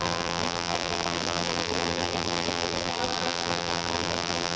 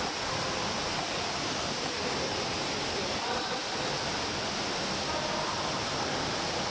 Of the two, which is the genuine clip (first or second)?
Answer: second